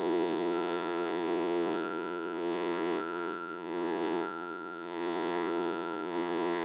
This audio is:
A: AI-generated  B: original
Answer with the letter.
A